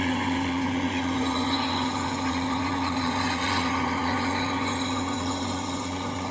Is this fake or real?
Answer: fake